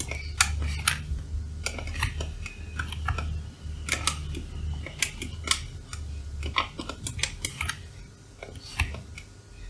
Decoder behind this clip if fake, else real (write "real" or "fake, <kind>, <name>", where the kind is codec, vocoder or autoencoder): real